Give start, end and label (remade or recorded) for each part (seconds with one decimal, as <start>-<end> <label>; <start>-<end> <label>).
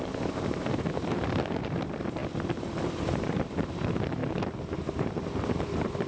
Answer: 0.0-6.1 remade